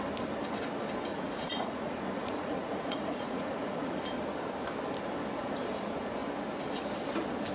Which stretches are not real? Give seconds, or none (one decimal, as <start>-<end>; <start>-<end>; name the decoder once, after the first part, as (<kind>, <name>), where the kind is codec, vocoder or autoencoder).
1.1-4.0 (vocoder, Vocos)